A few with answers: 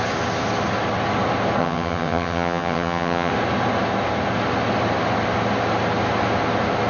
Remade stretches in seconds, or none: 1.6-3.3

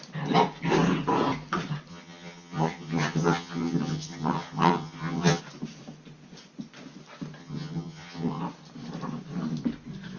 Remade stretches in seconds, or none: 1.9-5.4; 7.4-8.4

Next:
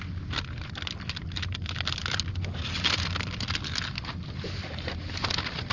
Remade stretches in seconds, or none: none

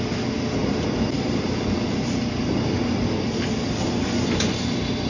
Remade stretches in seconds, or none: none

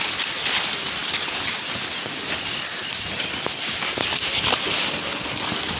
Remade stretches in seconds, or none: none

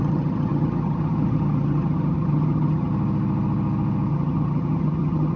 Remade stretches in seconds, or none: 0.0-2.9; 4.1-5.4